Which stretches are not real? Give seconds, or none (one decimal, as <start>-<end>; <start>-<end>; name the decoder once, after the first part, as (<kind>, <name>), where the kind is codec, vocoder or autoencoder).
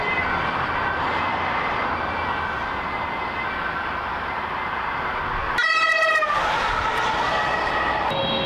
none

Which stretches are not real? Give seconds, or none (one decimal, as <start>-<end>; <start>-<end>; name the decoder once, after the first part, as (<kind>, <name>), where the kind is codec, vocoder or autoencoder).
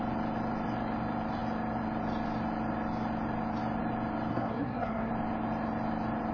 4.3-5.1 (codec, SNAC)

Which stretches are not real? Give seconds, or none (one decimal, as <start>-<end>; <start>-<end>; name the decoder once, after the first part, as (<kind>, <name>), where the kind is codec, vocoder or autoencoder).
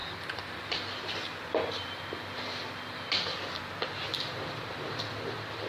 none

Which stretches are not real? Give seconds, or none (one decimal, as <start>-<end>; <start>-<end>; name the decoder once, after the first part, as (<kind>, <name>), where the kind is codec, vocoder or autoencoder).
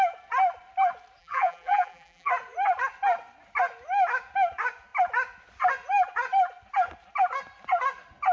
1.2-2.3 (vocoder, BigVGAN v2)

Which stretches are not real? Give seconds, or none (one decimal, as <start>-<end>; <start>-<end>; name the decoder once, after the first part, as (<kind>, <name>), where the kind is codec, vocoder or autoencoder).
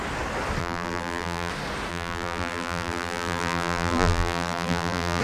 0.6-1.5 (vocoder, BigVGAN v2); 1.9-5.2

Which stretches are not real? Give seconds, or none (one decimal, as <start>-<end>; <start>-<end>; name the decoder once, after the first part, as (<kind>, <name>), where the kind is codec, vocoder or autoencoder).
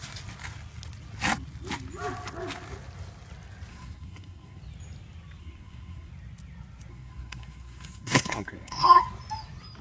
3.7-4.6 (codec, SNAC); 5.4-6.1; 6.9-9.0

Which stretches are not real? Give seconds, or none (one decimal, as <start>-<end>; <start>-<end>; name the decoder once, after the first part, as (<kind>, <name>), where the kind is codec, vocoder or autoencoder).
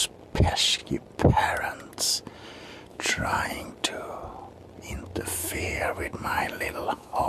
2.9-3.4 (autoencoder, DAC-VAE); 5.4-7.3